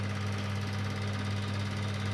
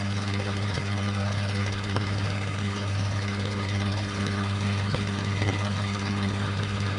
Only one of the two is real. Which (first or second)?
first